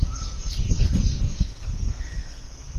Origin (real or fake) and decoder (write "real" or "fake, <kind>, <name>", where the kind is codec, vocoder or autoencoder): fake, codec, SNAC